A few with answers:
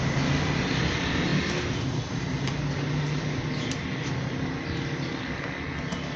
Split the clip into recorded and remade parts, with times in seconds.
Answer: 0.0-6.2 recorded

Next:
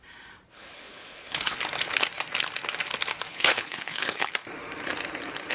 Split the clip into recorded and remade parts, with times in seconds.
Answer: 0.0-0.5 recorded; 0.5-1.6 remade; 1.6-3.3 recorded; 3.3-4.3 remade; 4.3-5.5 recorded

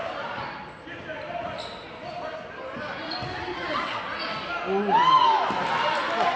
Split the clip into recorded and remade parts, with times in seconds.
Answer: 0.0-3.5 recorded; 3.5-4.0 remade; 4.0-6.4 recorded

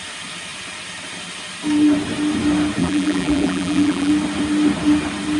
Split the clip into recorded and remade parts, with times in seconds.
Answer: 0.0-2.8 recorded; 2.8-4.1 remade; 4.1-5.4 recorded

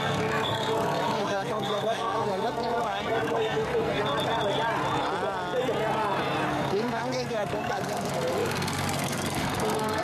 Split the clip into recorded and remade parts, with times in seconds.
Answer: 0.0-4.0 remade; 4.0-6.5 recorded; 6.5-10.0 remade

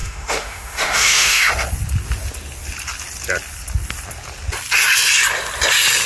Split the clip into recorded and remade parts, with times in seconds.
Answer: 0.0-1.5 remade; 1.5-6.1 recorded

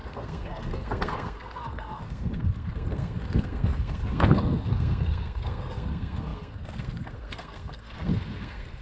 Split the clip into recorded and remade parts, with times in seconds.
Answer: 0.0-8.8 remade